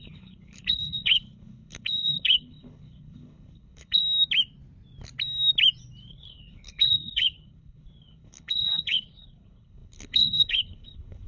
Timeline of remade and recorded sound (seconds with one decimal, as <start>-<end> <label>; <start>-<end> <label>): 0.0-4.0 remade; 4.0-6.1 recorded; 6.1-11.3 remade